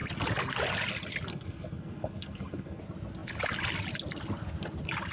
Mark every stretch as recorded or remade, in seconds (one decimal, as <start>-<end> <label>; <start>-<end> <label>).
0.0-1.3 recorded; 1.3-2.8 remade; 2.8-5.1 recorded